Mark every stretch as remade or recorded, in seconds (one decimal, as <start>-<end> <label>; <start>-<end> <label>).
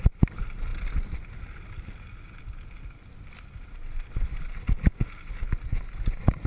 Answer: 0.0-6.5 recorded